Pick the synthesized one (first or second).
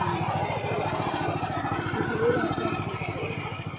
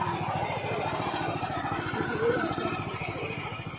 second